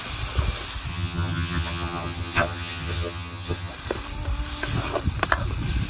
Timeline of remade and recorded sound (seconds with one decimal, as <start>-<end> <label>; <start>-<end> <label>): 0.0-0.9 recorded; 0.9-3.7 remade; 3.7-5.9 recorded